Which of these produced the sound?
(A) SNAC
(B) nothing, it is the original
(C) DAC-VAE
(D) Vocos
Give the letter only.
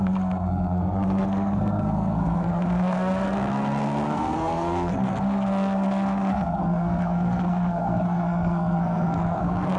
A